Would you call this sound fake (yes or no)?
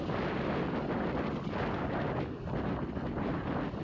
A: no